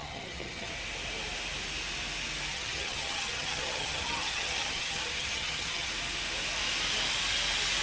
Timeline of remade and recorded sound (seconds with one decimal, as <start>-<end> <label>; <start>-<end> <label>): 0.0-0.7 remade; 0.7-2.5 recorded; 2.5-5.9 remade; 5.9-7.8 recorded